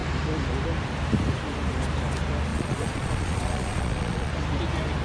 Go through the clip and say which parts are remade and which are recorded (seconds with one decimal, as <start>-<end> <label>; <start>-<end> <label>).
0.0-2.5 recorded; 2.5-4.3 remade; 4.3-5.0 recorded